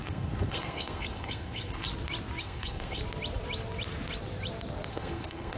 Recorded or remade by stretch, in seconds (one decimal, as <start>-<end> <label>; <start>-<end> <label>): 0.0-1.9 remade; 1.9-2.4 recorded; 2.4-3.0 remade; 3.0-4.9 recorded; 4.9-5.6 remade